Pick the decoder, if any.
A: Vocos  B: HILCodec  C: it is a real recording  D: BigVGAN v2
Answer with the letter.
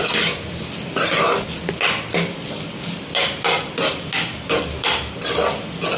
C